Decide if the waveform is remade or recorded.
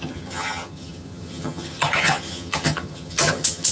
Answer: remade